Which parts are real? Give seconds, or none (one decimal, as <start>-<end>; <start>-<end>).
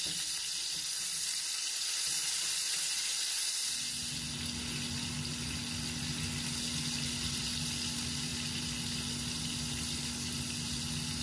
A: 0.0-11.2